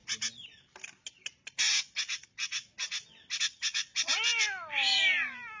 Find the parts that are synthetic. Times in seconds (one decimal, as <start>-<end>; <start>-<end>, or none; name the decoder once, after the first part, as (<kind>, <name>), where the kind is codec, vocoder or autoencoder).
none